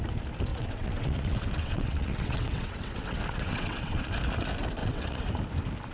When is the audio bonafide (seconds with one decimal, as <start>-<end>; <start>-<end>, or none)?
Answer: 0.0-0.5; 4.0-4.8; 5.3-5.9